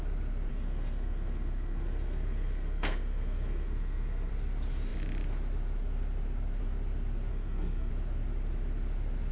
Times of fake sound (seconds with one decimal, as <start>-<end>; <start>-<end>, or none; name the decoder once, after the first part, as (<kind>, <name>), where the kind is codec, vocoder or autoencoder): 0.5-4.3 (codec, SNAC); 7.3-7.9